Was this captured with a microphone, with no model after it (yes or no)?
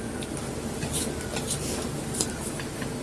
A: yes